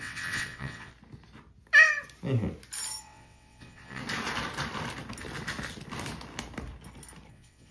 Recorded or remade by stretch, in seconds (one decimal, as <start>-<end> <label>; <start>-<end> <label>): 0.0-0.9 remade; 0.9-3.0 recorded; 3.0-4.0 remade; 4.0-7.3 recorded; 7.3-7.7 remade